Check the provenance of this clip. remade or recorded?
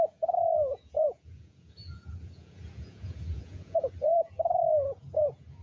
remade